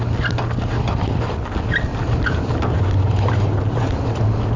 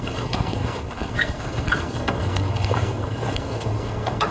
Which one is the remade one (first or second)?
second